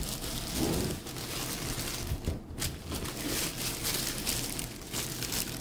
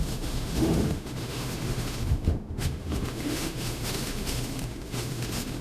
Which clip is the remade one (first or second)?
second